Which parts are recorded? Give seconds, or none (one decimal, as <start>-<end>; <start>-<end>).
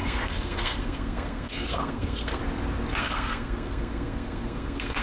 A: 2.4-3.0